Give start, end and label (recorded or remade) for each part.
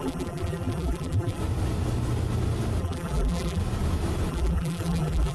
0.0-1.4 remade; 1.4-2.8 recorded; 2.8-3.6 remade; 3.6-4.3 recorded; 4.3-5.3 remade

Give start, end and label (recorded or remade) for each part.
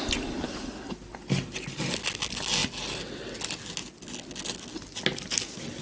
0.0-5.8 recorded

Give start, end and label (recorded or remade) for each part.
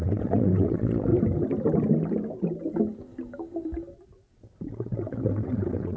0.0-1.1 remade; 1.1-4.7 recorded; 4.7-6.0 remade